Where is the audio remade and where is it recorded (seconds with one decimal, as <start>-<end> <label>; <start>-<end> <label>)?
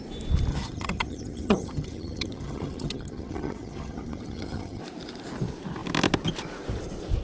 0.0-0.5 recorded; 0.5-4.8 remade; 4.8-7.2 recorded